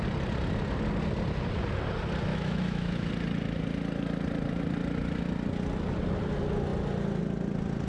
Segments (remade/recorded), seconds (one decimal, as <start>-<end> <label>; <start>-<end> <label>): 0.0-2.3 recorded; 2.3-3.1 remade; 3.1-7.9 recorded